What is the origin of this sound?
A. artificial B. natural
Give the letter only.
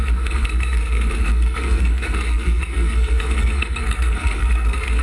A